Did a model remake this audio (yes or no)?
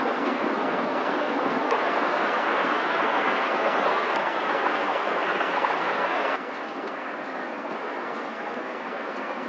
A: yes